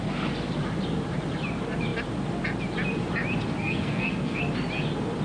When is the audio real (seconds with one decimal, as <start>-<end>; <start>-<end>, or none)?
0.0-3.6; 4.4-5.2